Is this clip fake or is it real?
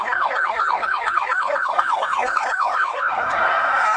fake